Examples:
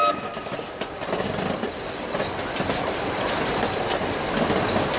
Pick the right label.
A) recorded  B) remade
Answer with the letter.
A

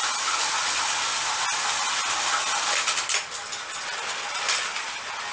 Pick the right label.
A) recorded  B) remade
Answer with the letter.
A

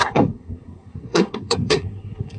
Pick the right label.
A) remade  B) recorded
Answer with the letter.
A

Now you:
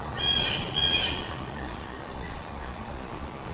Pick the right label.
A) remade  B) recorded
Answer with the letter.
A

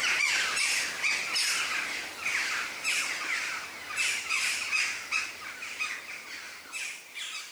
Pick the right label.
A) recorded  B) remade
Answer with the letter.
A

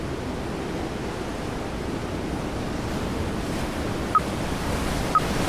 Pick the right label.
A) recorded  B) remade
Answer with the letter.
A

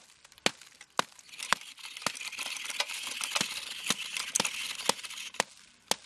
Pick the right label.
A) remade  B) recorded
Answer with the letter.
B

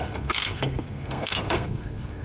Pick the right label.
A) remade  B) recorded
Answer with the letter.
A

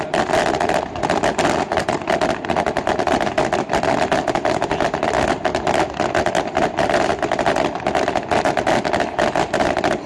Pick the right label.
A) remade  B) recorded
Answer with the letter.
B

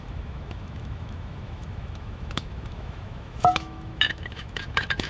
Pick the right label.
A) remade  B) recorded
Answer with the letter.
A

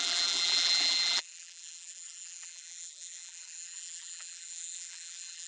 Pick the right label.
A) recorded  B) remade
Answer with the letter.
B